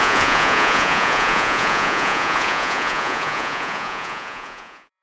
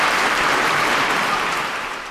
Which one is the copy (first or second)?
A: first